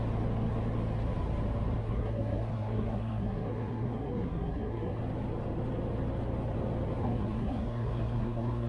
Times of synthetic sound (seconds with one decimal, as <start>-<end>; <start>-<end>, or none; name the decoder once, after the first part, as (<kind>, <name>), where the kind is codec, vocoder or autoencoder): 1.8-5.0 (codec, SNAC); 7.0-8.7